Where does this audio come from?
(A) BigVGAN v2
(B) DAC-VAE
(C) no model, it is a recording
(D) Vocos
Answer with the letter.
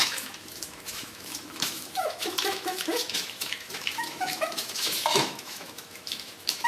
B